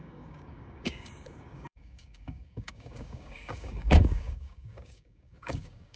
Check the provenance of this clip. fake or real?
fake